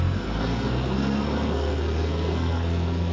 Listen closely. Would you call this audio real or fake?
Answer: fake